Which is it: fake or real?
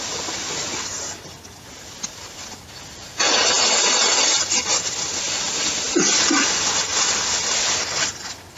real